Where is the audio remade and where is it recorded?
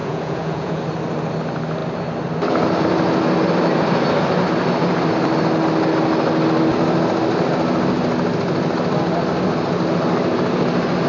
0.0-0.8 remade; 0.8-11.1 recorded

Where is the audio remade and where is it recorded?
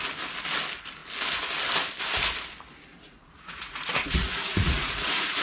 0.0-2.9 recorded; 2.9-5.4 remade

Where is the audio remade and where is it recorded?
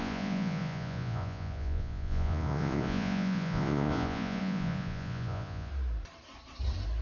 0.0-5.7 remade; 5.7-7.0 recorded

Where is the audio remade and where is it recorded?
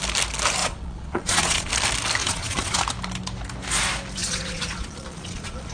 0.0-0.6 recorded; 0.6-1.7 remade; 1.7-2.2 recorded; 2.2-2.8 remade; 2.8-4.2 recorded; 4.2-5.7 remade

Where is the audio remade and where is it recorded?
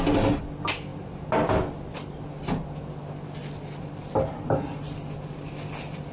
0.0-6.1 recorded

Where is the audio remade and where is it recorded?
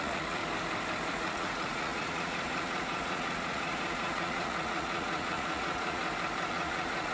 0.0-0.4 remade; 0.4-1.1 recorded; 1.1-6.0 remade; 6.0-6.5 recorded; 6.5-7.1 remade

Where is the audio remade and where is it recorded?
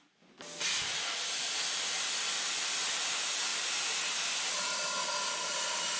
0.0-6.0 recorded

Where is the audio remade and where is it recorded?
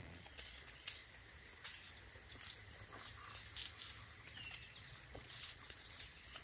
0.0-1.0 remade; 1.0-4.8 recorded; 4.8-6.4 remade